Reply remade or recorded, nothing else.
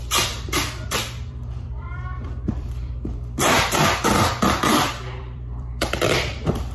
remade